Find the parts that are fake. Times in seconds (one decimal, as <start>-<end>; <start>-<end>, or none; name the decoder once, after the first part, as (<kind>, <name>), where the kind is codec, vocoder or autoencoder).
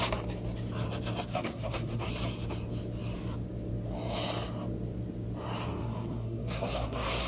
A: 1.3-2.1 (codec, SNAC); 5.8-7.3